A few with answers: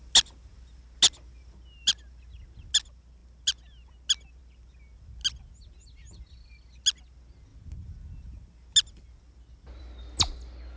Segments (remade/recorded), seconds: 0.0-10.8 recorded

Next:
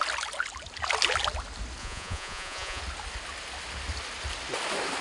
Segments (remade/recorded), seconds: 0.0-1.8 recorded; 1.8-2.8 remade; 2.8-5.0 recorded